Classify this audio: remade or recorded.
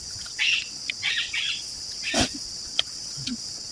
remade